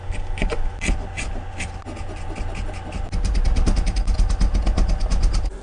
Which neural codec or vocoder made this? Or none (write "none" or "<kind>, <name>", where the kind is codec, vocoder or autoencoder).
none